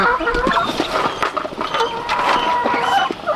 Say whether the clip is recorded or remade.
recorded